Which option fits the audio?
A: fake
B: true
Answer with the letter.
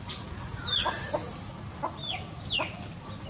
B